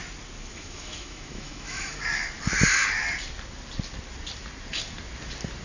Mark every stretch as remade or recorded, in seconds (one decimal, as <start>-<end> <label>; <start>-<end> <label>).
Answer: 0.0-0.5 recorded; 0.5-2.0 remade; 2.0-5.6 recorded